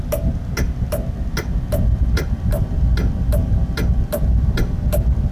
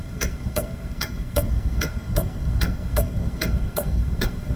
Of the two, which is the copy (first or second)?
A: second